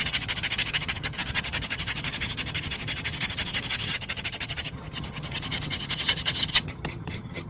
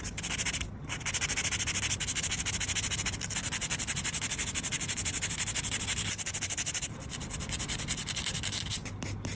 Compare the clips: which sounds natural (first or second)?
second